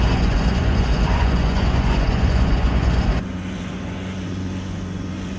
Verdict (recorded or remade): remade